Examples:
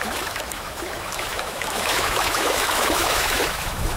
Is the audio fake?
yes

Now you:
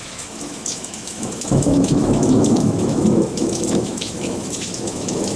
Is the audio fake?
yes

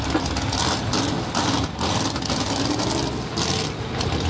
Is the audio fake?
no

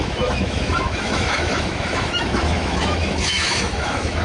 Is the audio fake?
yes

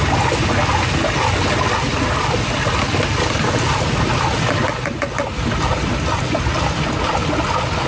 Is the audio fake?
no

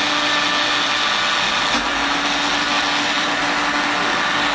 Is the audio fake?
no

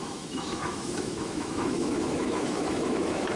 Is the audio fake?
yes